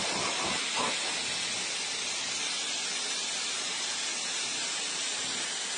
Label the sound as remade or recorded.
recorded